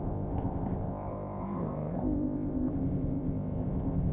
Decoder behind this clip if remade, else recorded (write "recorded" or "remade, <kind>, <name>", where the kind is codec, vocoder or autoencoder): remade, codec, ZipCodec